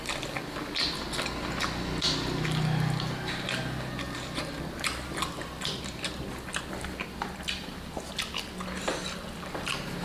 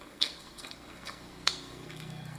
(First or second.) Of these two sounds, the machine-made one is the second